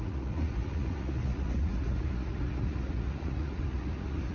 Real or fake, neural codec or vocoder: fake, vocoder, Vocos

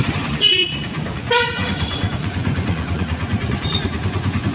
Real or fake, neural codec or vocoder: fake, vocoder, Vocos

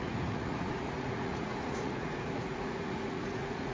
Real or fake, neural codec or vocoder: fake, vocoder, Vocos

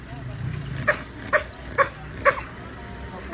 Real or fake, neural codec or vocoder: real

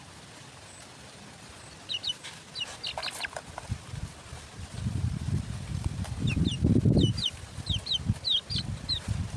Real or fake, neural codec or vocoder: real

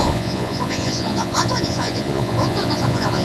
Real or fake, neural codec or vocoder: fake, vocoder, Vocos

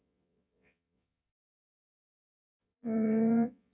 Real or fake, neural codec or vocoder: fake, vocoder, Vocos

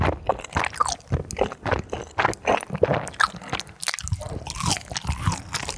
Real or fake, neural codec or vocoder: real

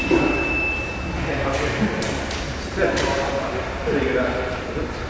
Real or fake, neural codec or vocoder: real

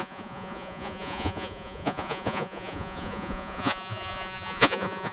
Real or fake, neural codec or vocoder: fake, vocoder, Vocos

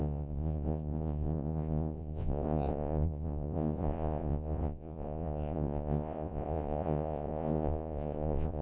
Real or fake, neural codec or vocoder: fake, vocoder, Vocos